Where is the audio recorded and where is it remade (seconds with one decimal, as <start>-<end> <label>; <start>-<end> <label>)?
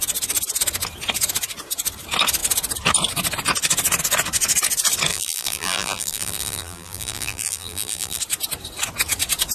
0.0-5.1 recorded; 5.1-8.2 remade; 8.2-9.5 recorded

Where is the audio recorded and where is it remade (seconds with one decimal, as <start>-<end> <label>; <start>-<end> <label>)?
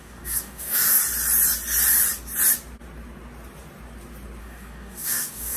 0.0-1.0 remade; 1.0-4.4 recorded; 4.4-5.6 remade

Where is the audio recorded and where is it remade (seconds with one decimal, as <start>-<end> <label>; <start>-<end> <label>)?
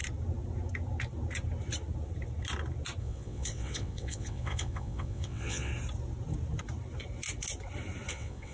0.0-3.0 recorded; 3.0-5.7 remade; 5.7-8.1 recorded; 8.1-8.5 remade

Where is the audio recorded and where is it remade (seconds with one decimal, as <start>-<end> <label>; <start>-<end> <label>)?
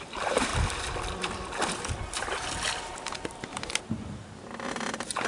0.0-0.5 remade; 0.5-3.7 recorded; 3.7-5.3 remade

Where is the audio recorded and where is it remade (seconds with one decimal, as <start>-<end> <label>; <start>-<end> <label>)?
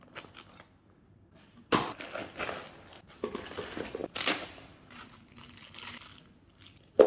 0.0-4.0 recorded; 4.0-4.9 remade; 4.9-7.1 recorded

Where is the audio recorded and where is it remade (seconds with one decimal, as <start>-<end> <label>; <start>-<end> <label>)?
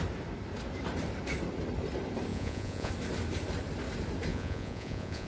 0.0-2.3 recorded; 2.3-2.9 remade; 2.9-4.3 recorded; 4.3-5.3 remade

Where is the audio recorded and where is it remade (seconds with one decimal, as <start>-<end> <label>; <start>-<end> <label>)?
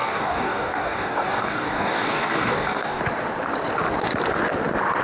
0.0-3.0 remade; 3.0-5.0 recorded